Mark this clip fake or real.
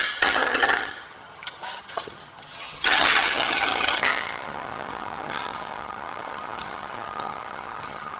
fake